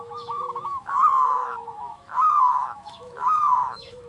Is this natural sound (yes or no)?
no